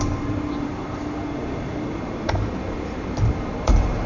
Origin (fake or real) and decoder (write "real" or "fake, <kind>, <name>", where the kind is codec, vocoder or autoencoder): fake, vocoder, BigVGAN v2